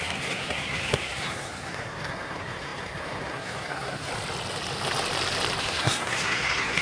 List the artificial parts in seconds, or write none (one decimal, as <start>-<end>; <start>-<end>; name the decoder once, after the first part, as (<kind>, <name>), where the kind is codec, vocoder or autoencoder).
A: 0.0-4.1 (codec, SNAC); 5.6-6.8